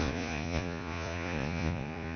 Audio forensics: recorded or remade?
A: remade